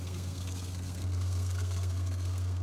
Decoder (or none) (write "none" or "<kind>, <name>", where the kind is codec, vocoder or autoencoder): codec, SNAC